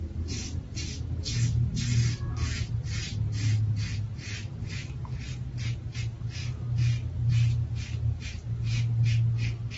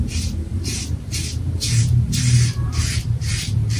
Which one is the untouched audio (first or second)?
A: first